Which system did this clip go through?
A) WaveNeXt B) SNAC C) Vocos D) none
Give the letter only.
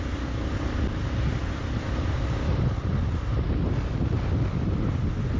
D